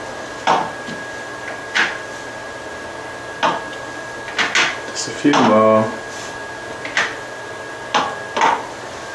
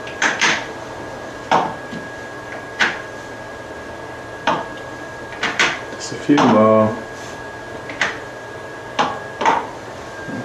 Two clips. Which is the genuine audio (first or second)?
first